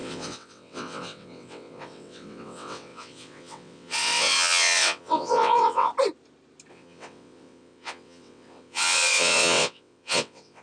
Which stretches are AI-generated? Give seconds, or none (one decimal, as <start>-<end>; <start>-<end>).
0.0-5.9; 6.7-10.6